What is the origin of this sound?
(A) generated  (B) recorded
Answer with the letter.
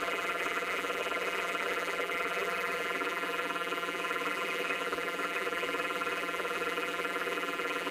A